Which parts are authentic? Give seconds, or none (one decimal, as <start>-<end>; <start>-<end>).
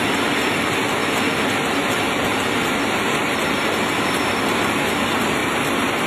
0.0-6.1